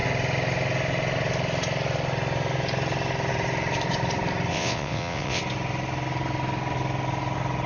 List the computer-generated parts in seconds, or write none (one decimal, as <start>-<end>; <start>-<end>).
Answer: 4.5-5.4